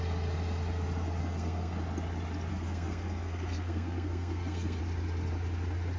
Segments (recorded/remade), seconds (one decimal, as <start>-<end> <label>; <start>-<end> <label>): 0.0-1.2 recorded; 1.2-1.8 remade; 1.8-2.5 recorded; 2.5-4.8 remade; 4.8-6.0 recorded